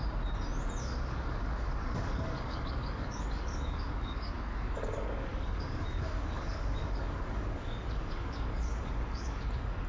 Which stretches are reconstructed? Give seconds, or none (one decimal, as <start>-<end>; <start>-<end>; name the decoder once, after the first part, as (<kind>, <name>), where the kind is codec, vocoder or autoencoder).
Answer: 0.8-9.9 (codec, DAC)